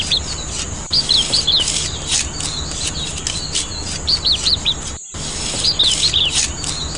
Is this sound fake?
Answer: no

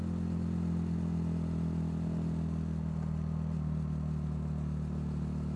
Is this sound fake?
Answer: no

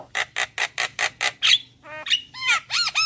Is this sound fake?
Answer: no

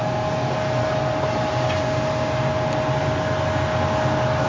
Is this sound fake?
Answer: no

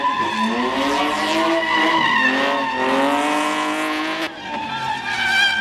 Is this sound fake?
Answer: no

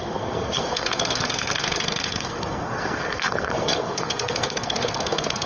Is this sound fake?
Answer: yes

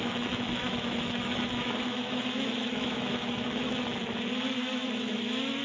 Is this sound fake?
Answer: yes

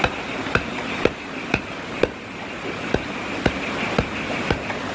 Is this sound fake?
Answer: no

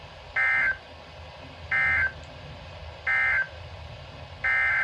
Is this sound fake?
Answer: no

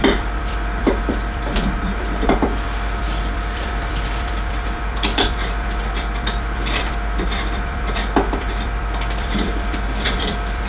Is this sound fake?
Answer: yes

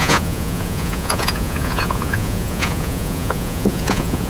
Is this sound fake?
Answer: yes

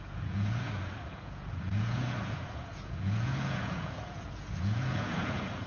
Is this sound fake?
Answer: yes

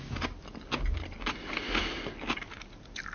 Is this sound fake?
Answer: no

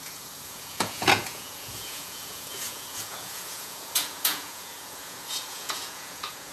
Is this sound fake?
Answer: yes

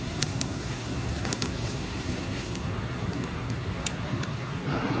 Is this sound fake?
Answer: yes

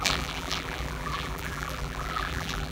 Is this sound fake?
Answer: yes